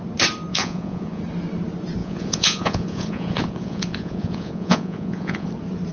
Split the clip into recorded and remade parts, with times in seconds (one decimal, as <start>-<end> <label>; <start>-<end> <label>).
0.0-0.5 recorded; 0.5-1.2 remade; 1.2-2.0 recorded; 2.0-5.5 remade; 5.5-5.9 recorded